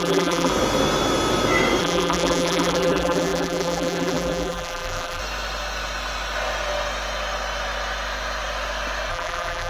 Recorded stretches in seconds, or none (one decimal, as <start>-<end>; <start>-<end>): 0.5-1.8; 5.2-9.1